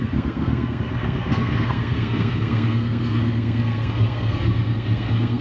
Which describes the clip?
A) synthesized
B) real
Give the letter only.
A